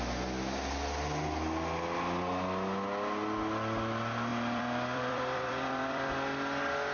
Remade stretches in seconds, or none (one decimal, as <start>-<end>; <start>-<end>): 4.3-6.1